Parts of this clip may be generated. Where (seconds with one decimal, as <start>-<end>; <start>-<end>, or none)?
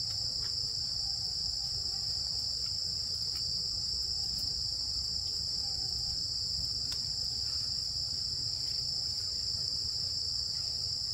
4.0-5.6